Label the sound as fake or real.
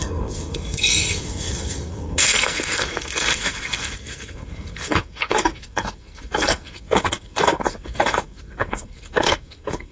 fake